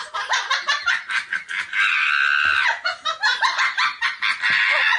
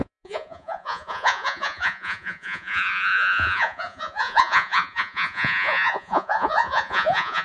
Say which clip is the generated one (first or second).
second